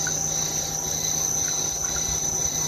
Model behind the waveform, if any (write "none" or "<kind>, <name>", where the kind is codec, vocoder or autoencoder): none